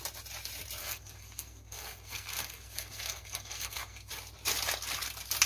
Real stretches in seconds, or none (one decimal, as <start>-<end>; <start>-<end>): 0.0-0.8; 4.1-5.5